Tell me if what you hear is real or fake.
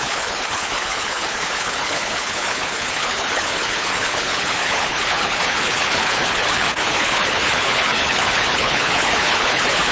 fake